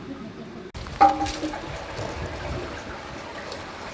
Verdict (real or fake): real